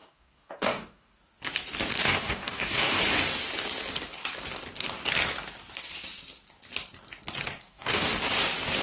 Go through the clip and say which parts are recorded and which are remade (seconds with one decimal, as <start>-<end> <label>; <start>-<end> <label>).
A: 0.0-1.2 remade; 1.2-2.0 recorded; 2.0-3.0 remade; 3.0-7.6 recorded; 7.6-8.1 remade; 8.1-8.8 recorded